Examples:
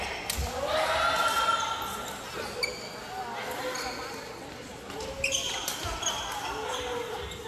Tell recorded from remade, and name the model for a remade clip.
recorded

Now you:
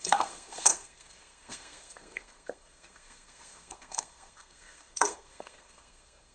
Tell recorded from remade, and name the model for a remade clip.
remade, codec, SNAC